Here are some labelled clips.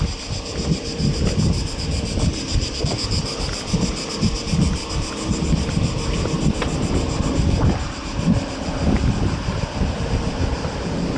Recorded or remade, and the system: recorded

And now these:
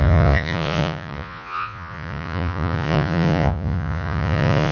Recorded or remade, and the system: remade, vocoder, Vocos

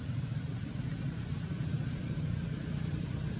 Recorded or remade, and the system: recorded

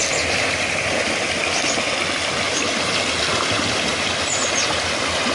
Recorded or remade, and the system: recorded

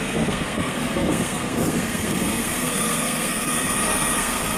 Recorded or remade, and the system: remade, codec, SNAC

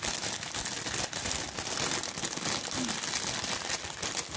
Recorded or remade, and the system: recorded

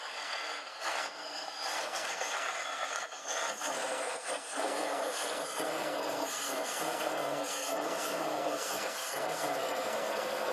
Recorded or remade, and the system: remade, codec, SNAC